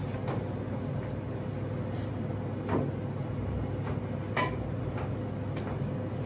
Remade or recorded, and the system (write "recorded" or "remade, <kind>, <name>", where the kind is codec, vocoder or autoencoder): recorded